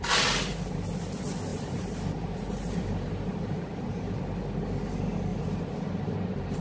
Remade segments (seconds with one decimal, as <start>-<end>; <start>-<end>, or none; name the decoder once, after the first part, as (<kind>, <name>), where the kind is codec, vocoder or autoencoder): 1.5-4.2 (vocoder, BigVGAN v2); 5.3-6.6